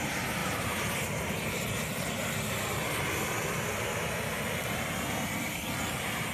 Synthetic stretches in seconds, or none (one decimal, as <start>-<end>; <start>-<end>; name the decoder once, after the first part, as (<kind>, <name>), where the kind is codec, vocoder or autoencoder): 0.4-1.8 (vocoder, BigVGAN v2)